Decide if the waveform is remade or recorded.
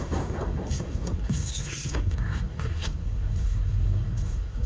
remade